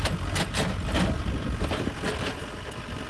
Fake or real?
real